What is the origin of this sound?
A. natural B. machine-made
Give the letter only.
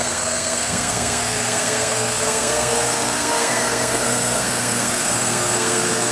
B